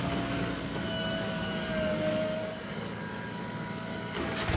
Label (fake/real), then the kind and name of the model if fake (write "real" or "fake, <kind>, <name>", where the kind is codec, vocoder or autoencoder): fake, codec, DAC